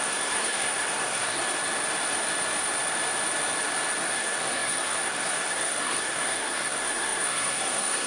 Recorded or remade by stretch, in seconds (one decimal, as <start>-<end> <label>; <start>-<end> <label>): 0.0-1.4 remade; 1.4-4.0 recorded; 4.0-8.1 remade